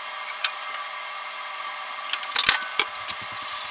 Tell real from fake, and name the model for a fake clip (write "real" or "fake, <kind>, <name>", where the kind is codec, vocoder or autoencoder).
real